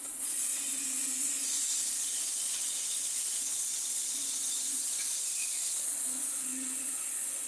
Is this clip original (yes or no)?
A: no